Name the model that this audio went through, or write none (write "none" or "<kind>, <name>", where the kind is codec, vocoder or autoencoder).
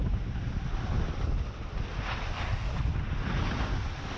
none